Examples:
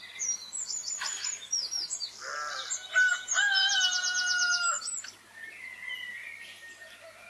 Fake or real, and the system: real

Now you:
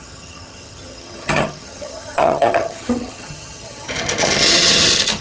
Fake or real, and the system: fake, vocoder, HiFi-GAN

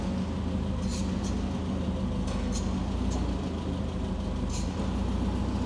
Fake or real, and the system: real